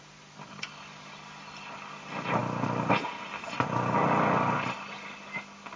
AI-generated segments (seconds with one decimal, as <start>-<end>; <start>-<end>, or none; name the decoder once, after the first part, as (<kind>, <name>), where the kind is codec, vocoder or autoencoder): none